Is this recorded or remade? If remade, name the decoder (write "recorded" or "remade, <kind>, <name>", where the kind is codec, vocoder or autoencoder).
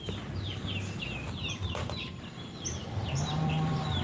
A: remade, vocoder, BigVGAN v2